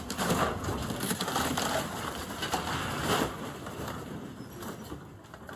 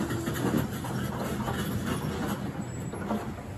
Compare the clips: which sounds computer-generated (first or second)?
first